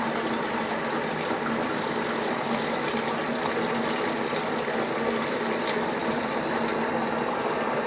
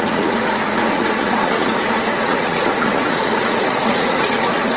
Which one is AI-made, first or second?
second